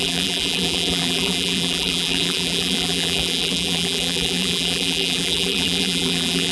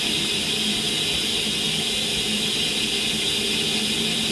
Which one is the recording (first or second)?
second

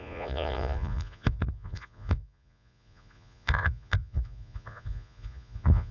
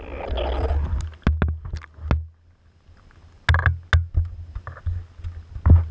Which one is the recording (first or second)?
second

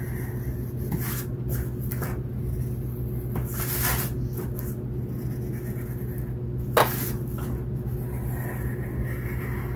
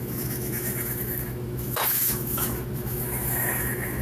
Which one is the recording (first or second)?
first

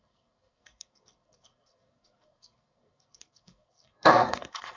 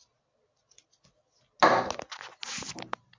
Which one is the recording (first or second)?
second